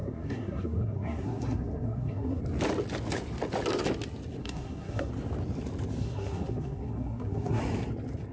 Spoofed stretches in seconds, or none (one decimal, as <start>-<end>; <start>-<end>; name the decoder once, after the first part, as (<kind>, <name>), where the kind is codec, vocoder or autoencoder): 0.0-2.4 (codec, SNAC); 4.4-5.1; 6.0-7.6